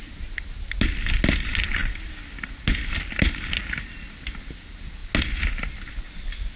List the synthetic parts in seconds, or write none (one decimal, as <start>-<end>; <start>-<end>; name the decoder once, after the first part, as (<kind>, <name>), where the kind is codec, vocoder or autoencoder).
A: none